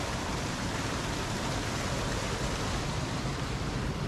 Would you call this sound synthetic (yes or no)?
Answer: no